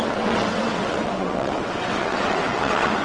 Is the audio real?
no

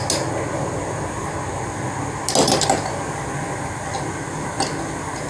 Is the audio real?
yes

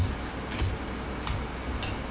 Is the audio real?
yes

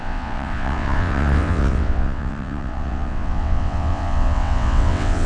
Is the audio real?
no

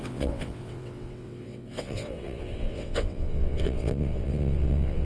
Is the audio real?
no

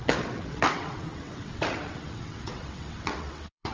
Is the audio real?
no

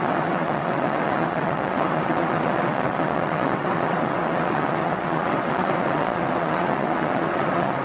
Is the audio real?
no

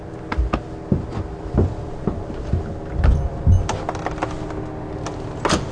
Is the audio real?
yes